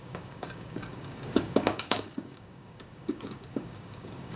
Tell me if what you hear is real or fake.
fake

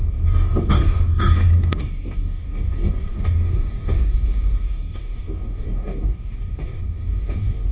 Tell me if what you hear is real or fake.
fake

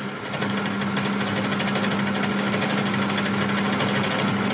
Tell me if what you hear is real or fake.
real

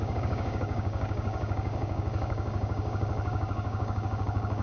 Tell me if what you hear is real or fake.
fake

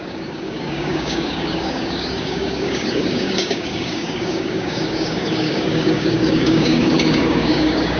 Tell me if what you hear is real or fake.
fake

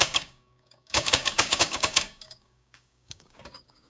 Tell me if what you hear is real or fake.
fake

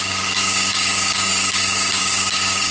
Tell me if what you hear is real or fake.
fake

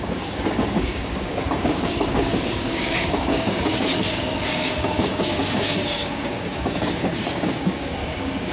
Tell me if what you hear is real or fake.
fake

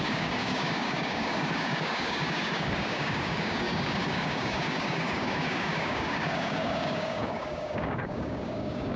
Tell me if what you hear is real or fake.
fake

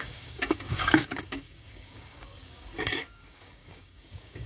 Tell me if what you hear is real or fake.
fake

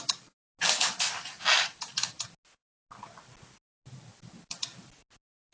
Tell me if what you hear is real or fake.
real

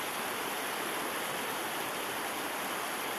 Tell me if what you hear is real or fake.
real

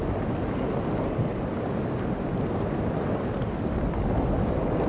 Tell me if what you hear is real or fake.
real